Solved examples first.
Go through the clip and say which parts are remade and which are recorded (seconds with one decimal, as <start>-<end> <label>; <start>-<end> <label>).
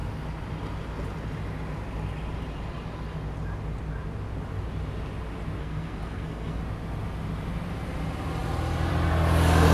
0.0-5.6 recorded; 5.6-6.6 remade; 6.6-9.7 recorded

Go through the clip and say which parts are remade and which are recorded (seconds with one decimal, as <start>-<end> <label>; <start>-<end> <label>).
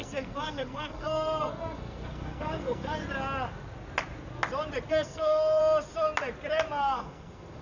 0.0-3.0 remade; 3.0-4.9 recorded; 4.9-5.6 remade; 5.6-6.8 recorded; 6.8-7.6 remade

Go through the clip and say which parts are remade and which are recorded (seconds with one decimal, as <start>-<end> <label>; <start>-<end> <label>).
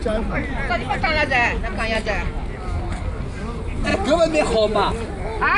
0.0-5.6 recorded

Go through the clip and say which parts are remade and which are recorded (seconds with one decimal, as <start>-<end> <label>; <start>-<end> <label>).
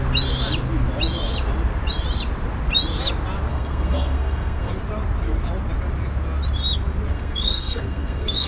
0.0-3.5 recorded; 3.5-4.7 remade; 4.7-7.1 recorded; 7.1-8.5 remade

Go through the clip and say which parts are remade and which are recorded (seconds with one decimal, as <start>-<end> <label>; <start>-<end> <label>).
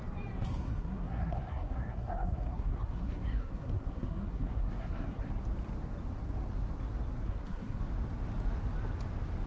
0.0-0.5 recorded; 0.5-5.3 remade; 5.3-7.3 recorded; 7.3-7.8 remade; 7.8-9.5 recorded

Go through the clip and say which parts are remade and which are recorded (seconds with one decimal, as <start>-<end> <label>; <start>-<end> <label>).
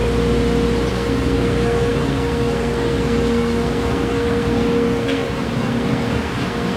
0.0-0.9 recorded; 0.9-6.8 remade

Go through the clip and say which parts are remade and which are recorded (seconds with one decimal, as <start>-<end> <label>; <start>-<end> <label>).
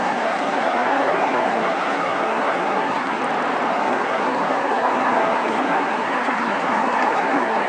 0.0-3.2 remade; 3.2-3.7 recorded; 3.7-7.7 remade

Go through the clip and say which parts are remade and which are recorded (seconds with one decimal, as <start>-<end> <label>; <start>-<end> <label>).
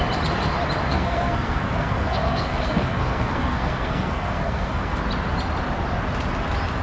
0.0-0.9 recorded; 0.9-5.0 remade; 5.0-6.8 recorded